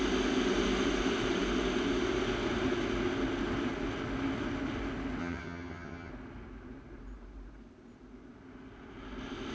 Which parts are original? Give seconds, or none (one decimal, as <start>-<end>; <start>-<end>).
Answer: 0.0-5.2; 6.1-9.5